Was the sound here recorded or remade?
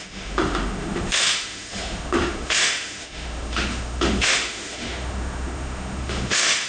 remade